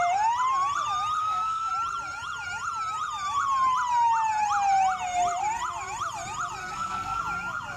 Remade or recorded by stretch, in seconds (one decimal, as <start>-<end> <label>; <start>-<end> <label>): 0.0-1.2 recorded; 1.2-1.7 remade; 1.7-6.6 recorded; 6.6-7.2 remade; 7.2-7.8 recorded